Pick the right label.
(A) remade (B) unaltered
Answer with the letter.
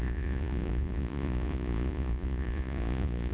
A